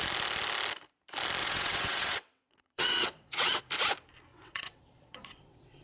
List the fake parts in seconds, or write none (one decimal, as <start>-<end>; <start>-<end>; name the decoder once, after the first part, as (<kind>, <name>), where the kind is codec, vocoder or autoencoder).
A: 1.4-3.6 (vocoder, WaveNeXt); 4.3-5.8

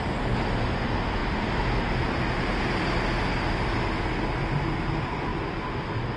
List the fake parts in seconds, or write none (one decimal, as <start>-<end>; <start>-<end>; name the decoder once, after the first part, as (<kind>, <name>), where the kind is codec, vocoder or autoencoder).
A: none

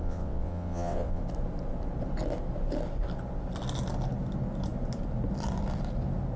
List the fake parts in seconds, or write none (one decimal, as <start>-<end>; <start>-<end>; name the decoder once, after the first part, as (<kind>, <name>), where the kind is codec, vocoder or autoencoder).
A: 0.0-1.2 (vocoder, WaveNeXt)

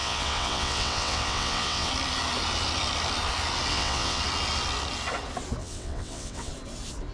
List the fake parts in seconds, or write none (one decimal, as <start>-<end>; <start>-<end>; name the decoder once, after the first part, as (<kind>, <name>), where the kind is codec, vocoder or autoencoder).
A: 0.0-1.9 (vocoder, WaveNeXt); 3.7-4.2; 5.6-6.5

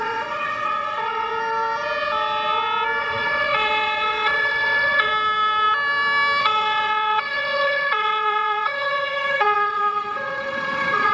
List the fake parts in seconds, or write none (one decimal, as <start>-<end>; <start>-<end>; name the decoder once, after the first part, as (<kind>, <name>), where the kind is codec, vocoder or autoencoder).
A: 0.0-1.3 (vocoder, WaveNeXt); 3.0-5.1; 6.4-11.1

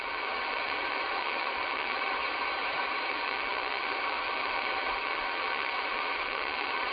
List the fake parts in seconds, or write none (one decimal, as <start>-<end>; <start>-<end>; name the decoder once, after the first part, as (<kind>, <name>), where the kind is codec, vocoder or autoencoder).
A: 0.0-2.2 (vocoder, WaveNeXt); 3.1-6.9